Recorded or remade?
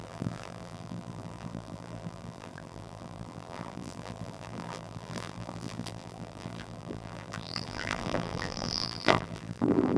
remade